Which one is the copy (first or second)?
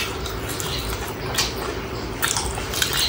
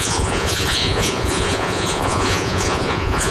second